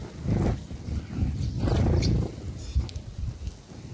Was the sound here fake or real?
real